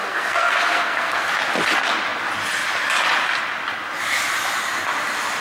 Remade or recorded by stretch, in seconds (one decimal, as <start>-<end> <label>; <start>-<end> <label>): 0.0-1.3 remade; 1.3-5.4 recorded